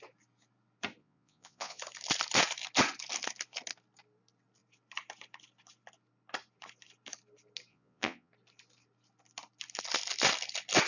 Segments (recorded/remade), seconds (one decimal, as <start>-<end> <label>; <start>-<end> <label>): 0.0-1.0 recorded; 1.0-1.8 remade; 1.8-7.7 recorded; 7.7-8.3 remade; 8.3-10.9 recorded